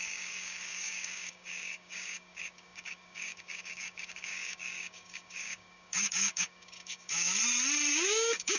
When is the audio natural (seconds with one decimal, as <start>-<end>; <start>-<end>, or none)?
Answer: 7.4-7.9